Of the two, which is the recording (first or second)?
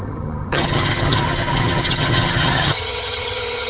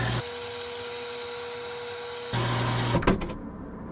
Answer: second